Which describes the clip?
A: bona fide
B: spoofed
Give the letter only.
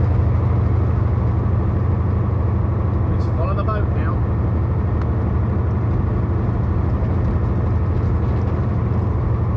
A